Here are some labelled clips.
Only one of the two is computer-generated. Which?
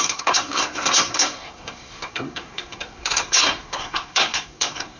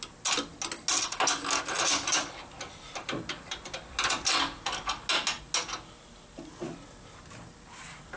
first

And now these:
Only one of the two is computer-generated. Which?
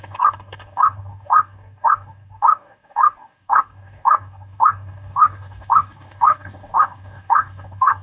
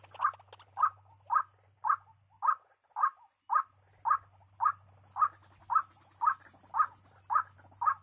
first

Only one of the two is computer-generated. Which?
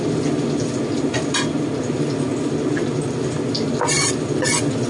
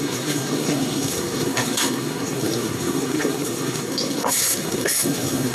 second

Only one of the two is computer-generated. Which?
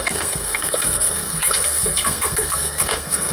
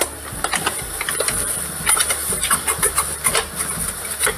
first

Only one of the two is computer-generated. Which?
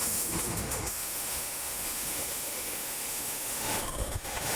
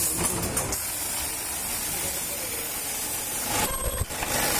first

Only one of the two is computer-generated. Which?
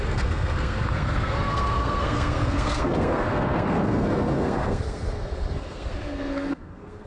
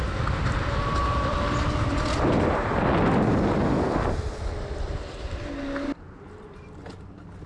first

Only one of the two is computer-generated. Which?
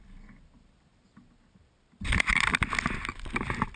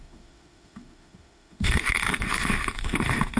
second